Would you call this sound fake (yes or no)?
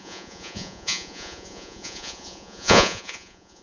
yes